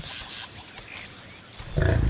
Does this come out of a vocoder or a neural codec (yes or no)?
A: no